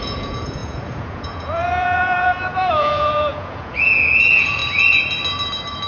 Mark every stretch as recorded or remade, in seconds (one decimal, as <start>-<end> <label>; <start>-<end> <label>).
0.0-4.6 remade; 4.6-5.9 recorded